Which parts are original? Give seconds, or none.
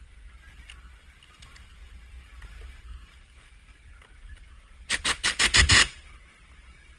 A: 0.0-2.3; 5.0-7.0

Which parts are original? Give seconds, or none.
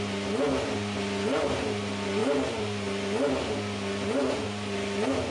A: 0.0-5.3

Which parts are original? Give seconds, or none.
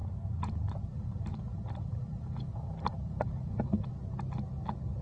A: 0.0-0.9; 3.9-5.0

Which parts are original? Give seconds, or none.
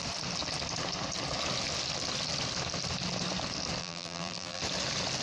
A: 0.0-3.8; 4.6-5.2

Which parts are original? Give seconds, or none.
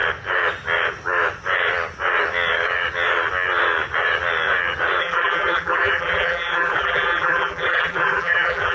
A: 0.0-5.0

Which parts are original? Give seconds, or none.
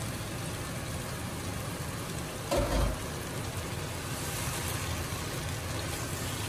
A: 0.0-6.5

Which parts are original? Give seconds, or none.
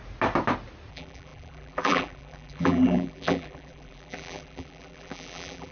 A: 0.0-0.9